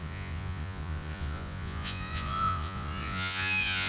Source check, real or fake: fake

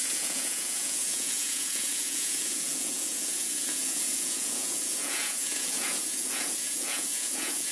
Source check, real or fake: fake